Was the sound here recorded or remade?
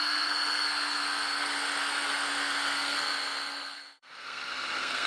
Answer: remade